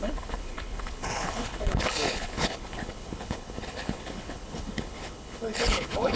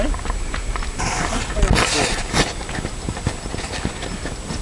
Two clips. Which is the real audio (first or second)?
second